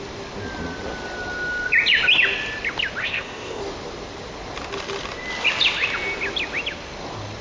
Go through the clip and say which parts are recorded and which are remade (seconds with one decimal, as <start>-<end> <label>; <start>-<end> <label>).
0.0-3.0 recorded; 3.0-3.6 remade; 3.6-7.4 recorded